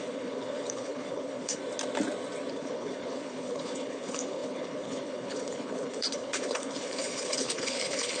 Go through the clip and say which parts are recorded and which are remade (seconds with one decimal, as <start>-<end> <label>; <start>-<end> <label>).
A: 0.0-1.6 remade; 1.6-2.5 recorded; 2.5-8.2 remade